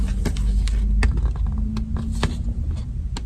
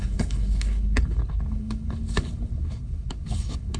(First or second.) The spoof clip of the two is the second